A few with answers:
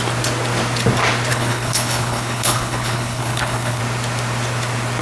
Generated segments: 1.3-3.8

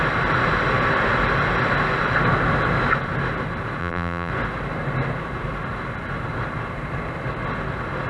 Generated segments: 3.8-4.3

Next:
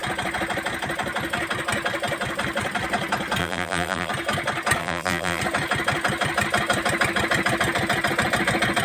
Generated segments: 3.4-4.1; 4.8-5.4

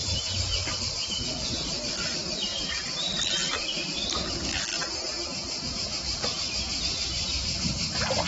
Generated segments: none

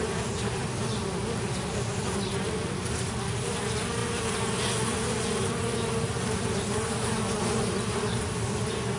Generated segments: none

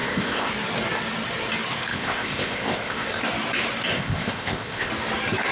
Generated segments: 0.0-0.5; 1.9-3.2; 3.9-4.9

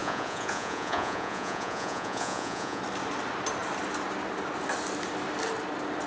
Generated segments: 0.0-2.8